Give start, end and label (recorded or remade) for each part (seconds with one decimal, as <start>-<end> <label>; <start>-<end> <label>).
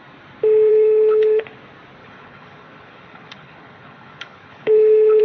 0.0-0.7 recorded; 0.7-1.4 remade; 1.4-2.0 recorded; 2.0-5.2 remade